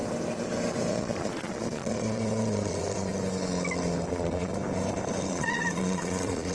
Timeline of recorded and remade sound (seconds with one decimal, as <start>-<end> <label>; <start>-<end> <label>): 0.0-0.9 recorded; 0.9-3.1 remade; 3.1-4.1 recorded; 4.1-4.5 remade; 4.5-5.3 recorded; 5.3-6.5 remade